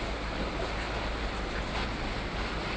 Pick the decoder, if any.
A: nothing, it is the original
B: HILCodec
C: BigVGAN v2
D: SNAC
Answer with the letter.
A